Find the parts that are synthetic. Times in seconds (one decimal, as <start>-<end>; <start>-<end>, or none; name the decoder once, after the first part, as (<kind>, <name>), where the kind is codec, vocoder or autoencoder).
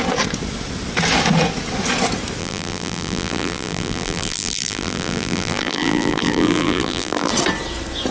2.4-7.3 (vocoder, BigVGAN v2)